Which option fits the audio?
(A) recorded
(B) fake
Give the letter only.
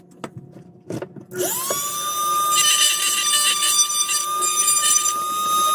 A